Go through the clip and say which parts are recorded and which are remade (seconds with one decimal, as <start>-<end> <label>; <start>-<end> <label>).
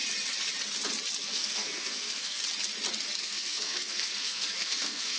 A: 0.0-1.2 recorded; 1.2-2.4 remade; 2.4-3.2 recorded; 3.2-5.2 remade